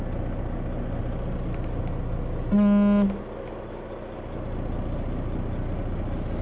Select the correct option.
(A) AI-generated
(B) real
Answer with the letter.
B